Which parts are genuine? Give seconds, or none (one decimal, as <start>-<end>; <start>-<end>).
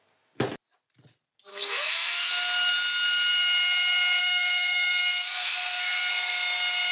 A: 0.0-1.5; 2.3-4.2; 6.1-6.9